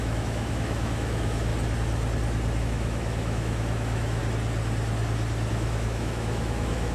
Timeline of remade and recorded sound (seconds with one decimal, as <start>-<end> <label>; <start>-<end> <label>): 0.0-1.5 remade; 1.5-2.6 recorded; 2.6-4.2 remade; 4.2-5.5 recorded; 5.5-6.9 remade

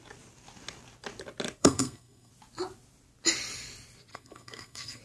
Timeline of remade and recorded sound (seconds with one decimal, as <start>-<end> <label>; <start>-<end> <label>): 0.0-1.6 recorded; 1.6-2.3 remade; 2.3-4.1 recorded; 4.1-5.0 remade

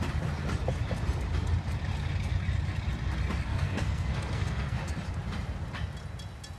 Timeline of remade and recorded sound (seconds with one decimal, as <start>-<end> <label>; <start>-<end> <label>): 0.0-3.5 recorded; 3.5-4.8 remade; 4.8-6.6 recorded

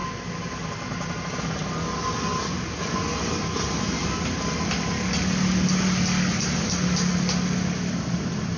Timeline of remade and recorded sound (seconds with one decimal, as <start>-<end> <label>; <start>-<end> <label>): 0.0-8.6 recorded

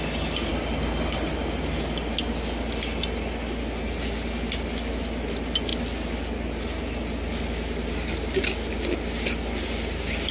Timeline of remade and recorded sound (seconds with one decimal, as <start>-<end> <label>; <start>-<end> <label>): 0.0-10.3 recorded

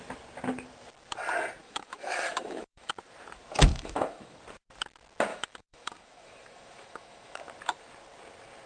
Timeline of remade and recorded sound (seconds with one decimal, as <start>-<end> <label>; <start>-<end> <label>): 0.0-1.6 recorded; 1.6-2.9 remade; 2.9-3.7 recorded; 3.7-4.4 remade; 4.4-5.3 recorded; 5.3-7.4 remade; 7.4-8.7 recorded

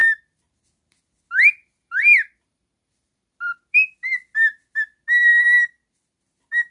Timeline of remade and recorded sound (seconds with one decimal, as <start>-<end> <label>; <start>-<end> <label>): 0.0-0.5 remade; 0.5-1.6 recorded; 1.6-3.3 remade; 3.3-6.7 recorded